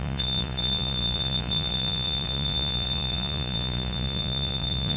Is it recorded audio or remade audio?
remade